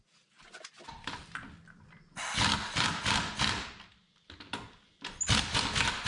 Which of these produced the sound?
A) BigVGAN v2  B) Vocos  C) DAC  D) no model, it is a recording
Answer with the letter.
D